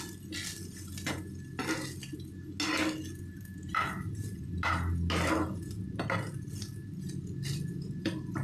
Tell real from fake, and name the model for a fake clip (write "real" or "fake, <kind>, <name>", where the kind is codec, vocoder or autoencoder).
real